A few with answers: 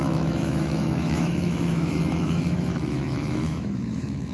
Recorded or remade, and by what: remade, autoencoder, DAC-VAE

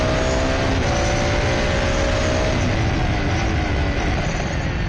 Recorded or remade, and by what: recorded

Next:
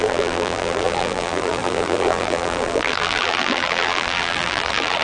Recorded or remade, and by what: remade, vocoder, BigVGAN v2